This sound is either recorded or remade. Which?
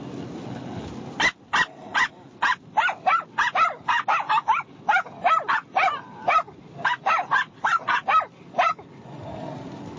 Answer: recorded